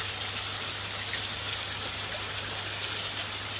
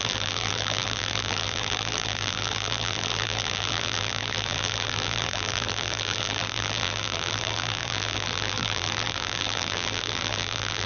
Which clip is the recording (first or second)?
first